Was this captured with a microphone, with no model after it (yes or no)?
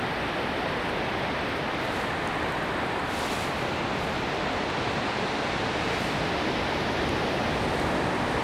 yes